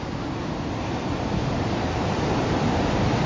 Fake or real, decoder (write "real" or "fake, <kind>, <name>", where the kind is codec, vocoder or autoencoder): real